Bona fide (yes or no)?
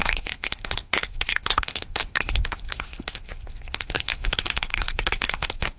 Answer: no